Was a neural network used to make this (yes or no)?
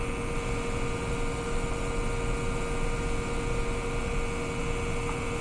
no